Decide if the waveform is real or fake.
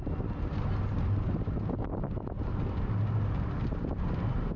real